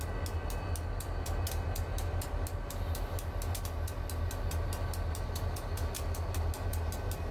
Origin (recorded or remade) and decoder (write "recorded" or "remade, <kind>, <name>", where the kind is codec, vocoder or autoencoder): recorded